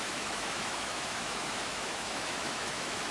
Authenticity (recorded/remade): remade